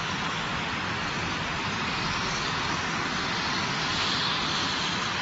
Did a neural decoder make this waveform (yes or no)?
no